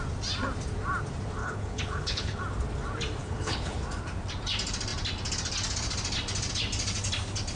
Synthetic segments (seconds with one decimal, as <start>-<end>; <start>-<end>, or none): 1.4-2.4; 3.2-3.8